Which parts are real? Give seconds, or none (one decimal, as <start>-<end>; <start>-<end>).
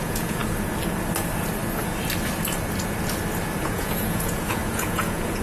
0.4-3.6